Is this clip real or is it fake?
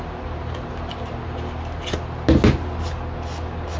real